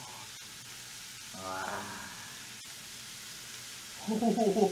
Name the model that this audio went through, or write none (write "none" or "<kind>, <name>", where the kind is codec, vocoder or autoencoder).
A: none